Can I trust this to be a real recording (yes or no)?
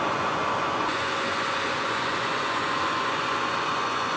no